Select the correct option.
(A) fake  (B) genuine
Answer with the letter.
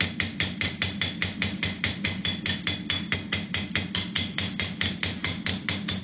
B